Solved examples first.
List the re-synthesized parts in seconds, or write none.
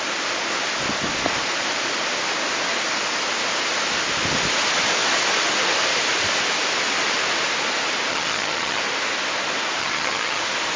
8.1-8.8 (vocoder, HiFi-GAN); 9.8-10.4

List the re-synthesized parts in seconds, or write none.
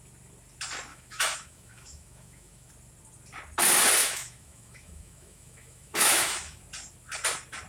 0.9-2.7 (autoencoder, DAC-VAE); 4.0-6.6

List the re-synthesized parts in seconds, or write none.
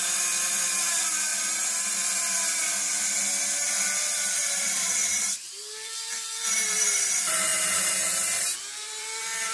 0.0-1.3 (vocoder, BigVGAN v2); 4.2-7.5; 8.6-9.5